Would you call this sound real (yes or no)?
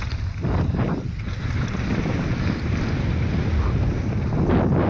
yes